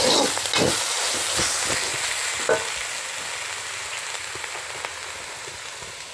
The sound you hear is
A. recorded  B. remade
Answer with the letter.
A